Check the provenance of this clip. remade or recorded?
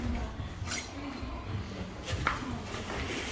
recorded